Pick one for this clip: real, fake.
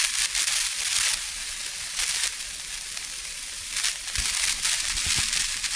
real